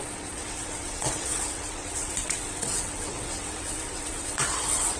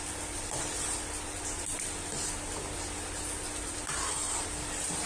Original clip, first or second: second